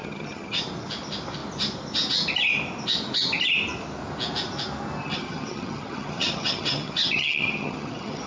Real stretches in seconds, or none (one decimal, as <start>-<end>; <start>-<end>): 0.6-5.0